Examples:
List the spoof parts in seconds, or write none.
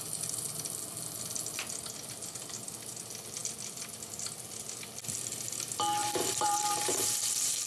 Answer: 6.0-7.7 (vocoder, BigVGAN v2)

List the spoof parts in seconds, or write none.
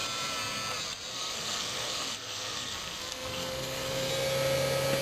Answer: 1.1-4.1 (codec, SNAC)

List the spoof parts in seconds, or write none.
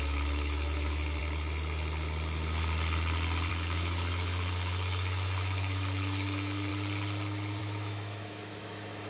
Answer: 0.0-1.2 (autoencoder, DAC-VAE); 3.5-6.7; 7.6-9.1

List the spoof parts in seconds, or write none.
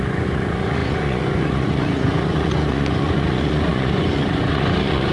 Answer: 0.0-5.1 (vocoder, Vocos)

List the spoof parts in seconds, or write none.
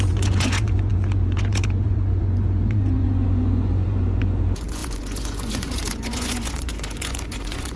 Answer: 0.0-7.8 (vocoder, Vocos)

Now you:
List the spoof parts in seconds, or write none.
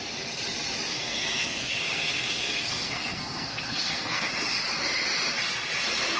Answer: 0.9-4.3 (codec, SNAC)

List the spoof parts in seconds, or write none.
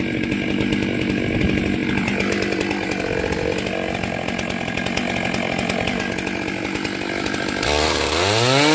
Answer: 1.8-2.7 (vocoder, BigVGAN v2)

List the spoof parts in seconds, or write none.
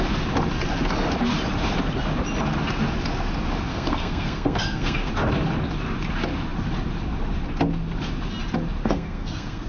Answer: 3.7-5.1 (codec, SNAC); 8.8-9.7